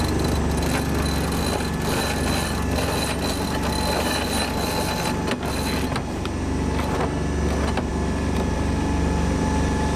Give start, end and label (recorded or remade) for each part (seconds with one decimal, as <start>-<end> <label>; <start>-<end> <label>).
0.0-10.0 recorded